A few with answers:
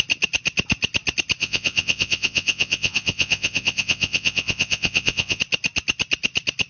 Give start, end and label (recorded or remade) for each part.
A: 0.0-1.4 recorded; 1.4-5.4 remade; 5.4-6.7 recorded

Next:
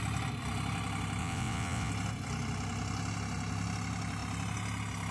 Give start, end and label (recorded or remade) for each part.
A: 0.0-1.2 recorded; 1.2-1.9 remade; 1.9-5.1 recorded

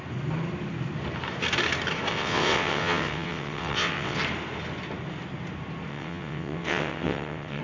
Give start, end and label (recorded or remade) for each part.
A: 0.0-2.1 recorded; 2.1-4.2 remade; 4.2-5.9 recorded; 5.9-7.6 remade

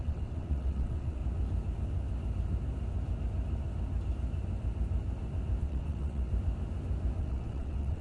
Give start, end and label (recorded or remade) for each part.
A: 0.0-1.2 remade; 1.2-5.6 recorded; 5.6-6.3 remade; 6.3-7.2 recorded; 7.2-8.0 remade

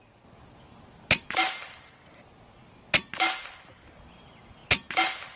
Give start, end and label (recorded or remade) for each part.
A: 0.0-5.4 recorded

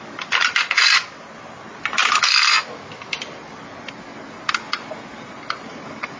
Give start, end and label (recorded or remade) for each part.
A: 0.0-6.2 recorded

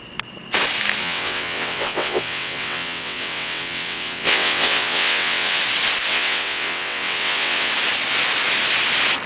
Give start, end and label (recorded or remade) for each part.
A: 0.0-1.0 recorded; 1.0-5.6 remade; 5.6-6.1 recorded; 6.1-7.7 remade; 7.7-9.3 recorded